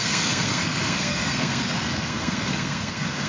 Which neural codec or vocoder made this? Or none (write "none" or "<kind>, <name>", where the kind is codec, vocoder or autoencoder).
codec, SNAC